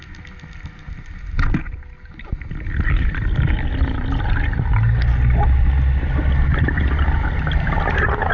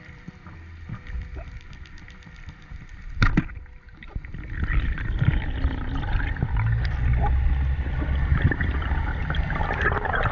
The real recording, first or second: first